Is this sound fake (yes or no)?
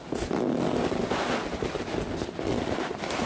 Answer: no